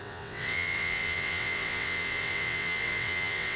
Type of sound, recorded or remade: remade